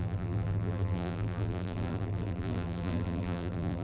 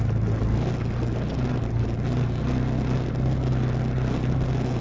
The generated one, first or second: first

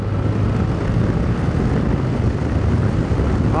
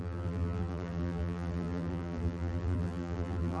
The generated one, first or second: second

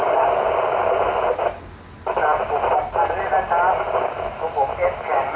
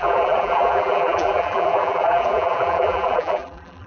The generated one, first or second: second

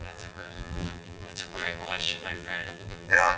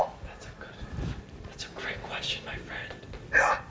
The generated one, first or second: first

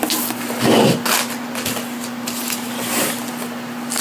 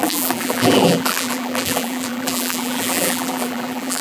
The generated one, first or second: second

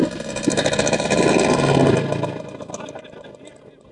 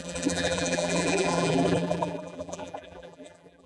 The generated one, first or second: second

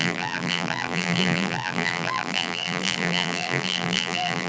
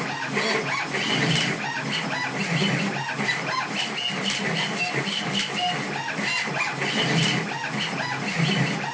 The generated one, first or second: first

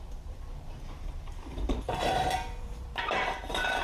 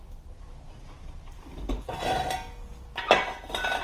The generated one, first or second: first